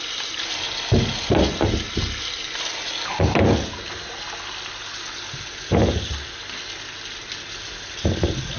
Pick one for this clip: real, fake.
real